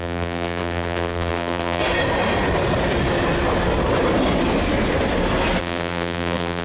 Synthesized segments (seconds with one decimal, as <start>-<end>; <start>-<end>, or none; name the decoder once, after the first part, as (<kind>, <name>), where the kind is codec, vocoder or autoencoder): 0.0-1.8 (vocoder, BigVGAN v2); 5.6-6.6